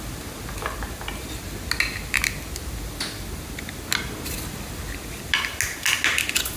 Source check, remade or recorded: recorded